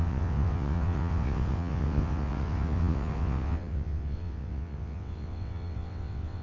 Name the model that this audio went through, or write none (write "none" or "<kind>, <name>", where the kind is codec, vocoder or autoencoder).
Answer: vocoder, WaveNeXt